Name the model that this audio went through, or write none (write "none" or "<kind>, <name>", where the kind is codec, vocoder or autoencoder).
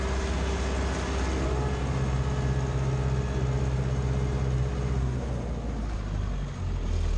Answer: none